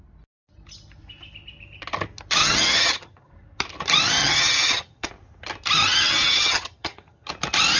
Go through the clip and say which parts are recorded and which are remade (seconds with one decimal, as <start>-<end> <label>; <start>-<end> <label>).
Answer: 0.0-2.4 recorded; 2.4-3.3 remade; 3.3-4.2 recorded; 4.2-5.1 remade; 5.1-5.9 recorded; 5.9-7.3 remade; 7.3-7.8 recorded